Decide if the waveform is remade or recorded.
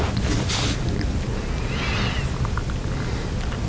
recorded